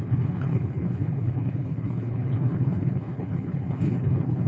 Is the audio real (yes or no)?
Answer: no